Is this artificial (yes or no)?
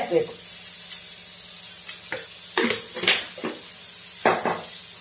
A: no